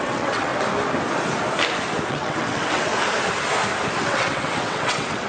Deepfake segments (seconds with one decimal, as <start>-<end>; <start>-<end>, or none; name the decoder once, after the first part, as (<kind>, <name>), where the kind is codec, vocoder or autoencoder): 0.0-0.5 (vocoder, WaveNeXt); 2.1-2.9; 4.0-5.3